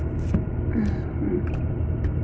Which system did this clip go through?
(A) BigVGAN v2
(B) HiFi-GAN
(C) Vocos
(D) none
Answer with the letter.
D